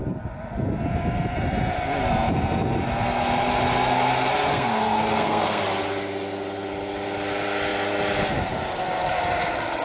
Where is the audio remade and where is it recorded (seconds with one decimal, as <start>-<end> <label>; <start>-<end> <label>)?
0.0-4.5 recorded; 4.5-5.6 remade; 5.6-9.8 recorded

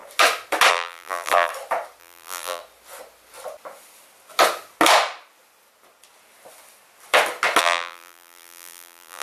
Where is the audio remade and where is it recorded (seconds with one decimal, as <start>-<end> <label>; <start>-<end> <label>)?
0.0-0.7 recorded; 0.7-1.5 remade; 1.5-2.0 recorded; 2.0-2.6 remade; 2.6-7.6 recorded; 7.6-9.2 remade

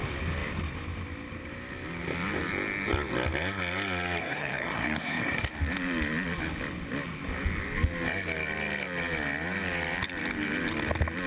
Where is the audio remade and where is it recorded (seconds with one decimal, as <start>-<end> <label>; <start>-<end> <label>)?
0.0-4.2 recorded; 4.2-5.5 remade; 5.5-11.3 recorded